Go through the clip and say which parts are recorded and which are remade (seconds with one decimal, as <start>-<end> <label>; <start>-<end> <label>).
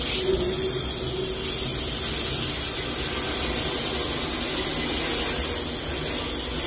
0.0-6.7 recorded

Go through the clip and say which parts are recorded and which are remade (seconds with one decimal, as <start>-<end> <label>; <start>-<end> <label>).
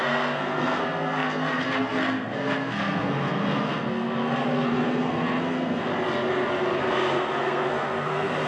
0.0-5.9 remade; 5.9-6.8 recorded; 6.8-8.5 remade